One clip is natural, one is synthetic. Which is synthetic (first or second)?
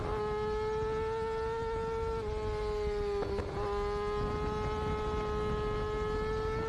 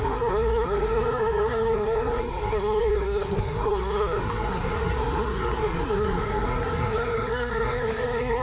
second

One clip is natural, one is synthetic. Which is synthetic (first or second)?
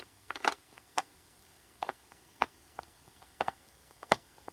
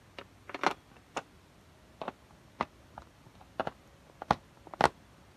first